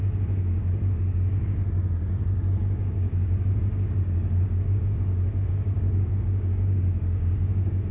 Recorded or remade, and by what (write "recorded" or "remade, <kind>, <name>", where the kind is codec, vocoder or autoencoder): remade, codec, DAC